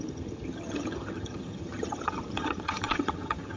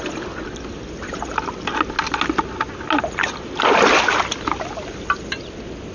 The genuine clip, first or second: second